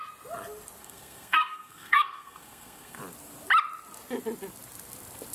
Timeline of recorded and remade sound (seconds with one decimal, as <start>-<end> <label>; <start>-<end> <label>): 0.0-0.8 recorded; 0.8-3.0 remade; 3.0-5.3 recorded